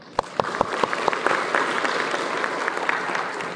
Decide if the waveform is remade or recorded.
recorded